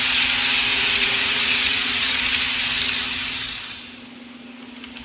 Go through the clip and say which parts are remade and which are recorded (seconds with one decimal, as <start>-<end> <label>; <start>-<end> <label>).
0.0-0.7 recorded; 0.7-2.2 remade; 2.2-5.0 recorded